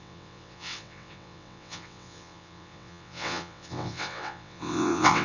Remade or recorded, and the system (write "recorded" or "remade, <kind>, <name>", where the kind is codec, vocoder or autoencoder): remade, vocoder, WaveNeXt